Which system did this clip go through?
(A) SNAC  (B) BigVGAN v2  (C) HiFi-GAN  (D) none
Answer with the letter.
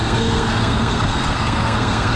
A